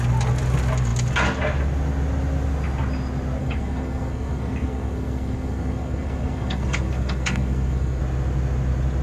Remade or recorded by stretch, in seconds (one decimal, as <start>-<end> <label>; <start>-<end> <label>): 0.0-3.4 recorded; 3.4-8.0 remade; 8.0-9.0 recorded